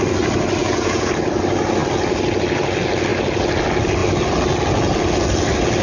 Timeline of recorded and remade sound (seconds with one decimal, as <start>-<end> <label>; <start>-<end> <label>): 0.0-0.6 recorded; 0.6-1.1 remade; 1.1-5.8 recorded